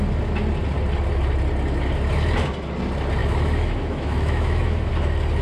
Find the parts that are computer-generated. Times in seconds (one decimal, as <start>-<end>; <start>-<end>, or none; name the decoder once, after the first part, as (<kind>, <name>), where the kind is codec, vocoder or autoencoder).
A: 3.2-4.9 (autoencoder, DAC-VAE)